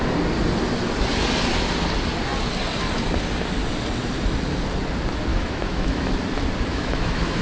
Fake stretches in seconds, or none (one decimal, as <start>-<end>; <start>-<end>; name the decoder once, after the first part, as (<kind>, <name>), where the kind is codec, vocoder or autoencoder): 5.3-6.1 (autoencoder, DAC-VAE); 6.7-7.4